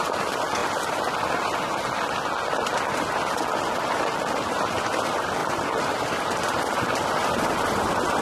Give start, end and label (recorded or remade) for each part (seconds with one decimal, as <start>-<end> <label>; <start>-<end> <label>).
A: 0.0-5.4 recorded; 5.4-7.4 remade; 7.4-8.2 recorded